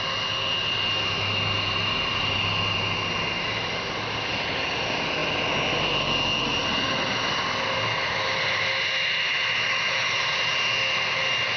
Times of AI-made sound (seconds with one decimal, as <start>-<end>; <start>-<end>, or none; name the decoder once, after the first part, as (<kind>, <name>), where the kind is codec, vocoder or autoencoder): none